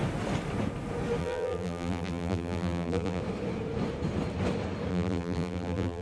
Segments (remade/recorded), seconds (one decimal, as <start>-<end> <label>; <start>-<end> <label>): 0.0-1.2 recorded; 1.2-3.2 remade; 3.2-4.9 recorded; 4.9-6.0 remade